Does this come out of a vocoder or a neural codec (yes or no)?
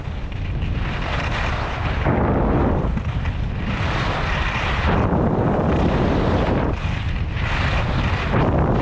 yes